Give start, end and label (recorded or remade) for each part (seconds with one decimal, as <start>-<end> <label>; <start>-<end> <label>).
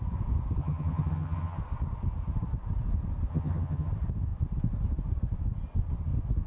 0.0-0.6 recorded; 0.6-1.6 remade; 1.6-3.3 recorded; 3.3-3.9 remade; 3.9-6.5 recorded